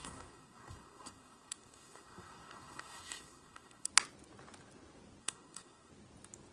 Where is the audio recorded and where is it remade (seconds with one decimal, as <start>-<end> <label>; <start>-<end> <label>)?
0.0-3.9 remade; 3.9-5.2 recorded; 5.2-5.9 remade; 5.9-6.5 recorded